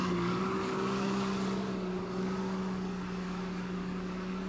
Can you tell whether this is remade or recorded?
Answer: remade